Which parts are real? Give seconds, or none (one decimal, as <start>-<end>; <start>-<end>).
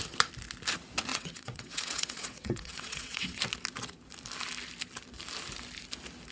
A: 0.0-1.1; 3.4-6.3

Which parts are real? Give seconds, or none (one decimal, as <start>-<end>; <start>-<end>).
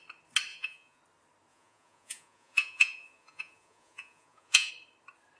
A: 0.0-0.5; 1.0-1.5; 4.7-5.4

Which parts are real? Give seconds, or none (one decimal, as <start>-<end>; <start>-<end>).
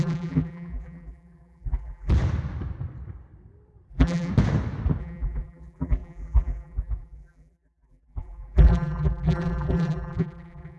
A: 2.1-3.9; 4.3-5.0